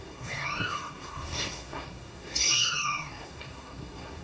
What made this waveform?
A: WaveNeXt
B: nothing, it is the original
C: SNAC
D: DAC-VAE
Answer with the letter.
C